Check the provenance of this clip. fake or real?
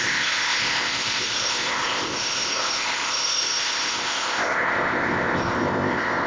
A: fake